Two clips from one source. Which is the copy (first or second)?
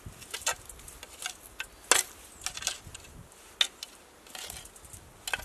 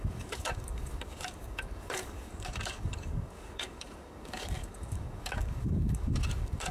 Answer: second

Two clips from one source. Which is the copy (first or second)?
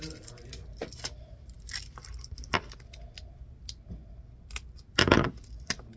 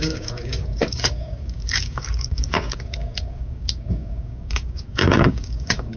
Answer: second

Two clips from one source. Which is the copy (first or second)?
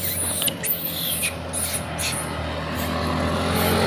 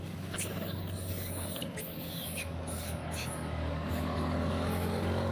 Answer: second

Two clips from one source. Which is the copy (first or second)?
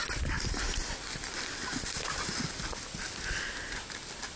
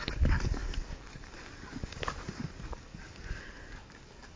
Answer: second